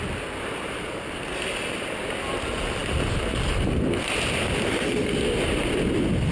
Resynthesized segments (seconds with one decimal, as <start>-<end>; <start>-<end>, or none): none